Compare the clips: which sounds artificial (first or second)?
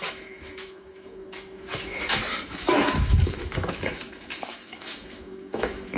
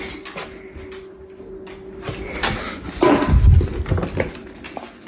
first